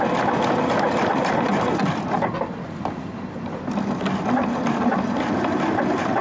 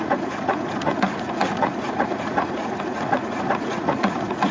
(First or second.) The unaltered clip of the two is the first